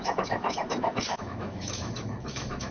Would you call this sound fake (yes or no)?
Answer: yes